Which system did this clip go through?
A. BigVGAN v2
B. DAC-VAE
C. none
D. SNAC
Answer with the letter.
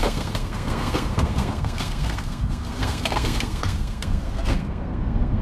D